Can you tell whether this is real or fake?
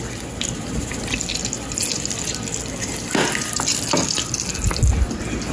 real